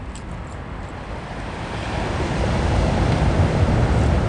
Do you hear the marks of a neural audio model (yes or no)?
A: no